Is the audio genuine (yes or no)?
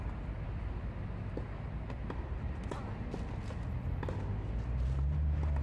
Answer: yes